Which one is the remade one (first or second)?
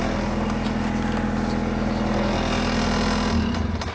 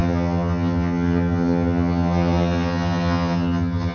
second